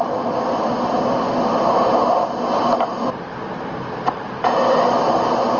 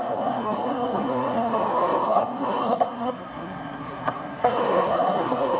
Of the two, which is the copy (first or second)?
second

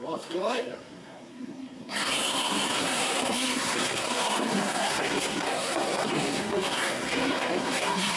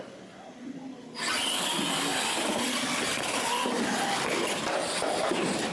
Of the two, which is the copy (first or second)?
first